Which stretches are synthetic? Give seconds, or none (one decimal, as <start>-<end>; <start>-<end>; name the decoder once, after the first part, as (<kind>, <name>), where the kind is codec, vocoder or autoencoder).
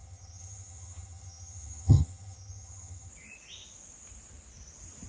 0.0-3.1 (vocoder, HiFi-GAN)